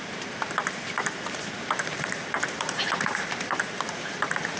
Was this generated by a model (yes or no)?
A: yes